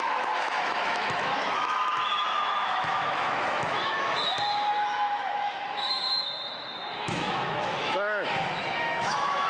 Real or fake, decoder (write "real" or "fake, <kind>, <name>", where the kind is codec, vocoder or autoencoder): fake, autoencoder, DAC-VAE